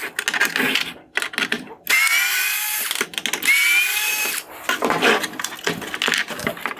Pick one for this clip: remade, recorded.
recorded